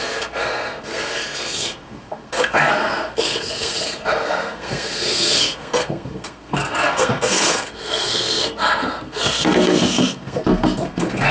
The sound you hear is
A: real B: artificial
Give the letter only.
B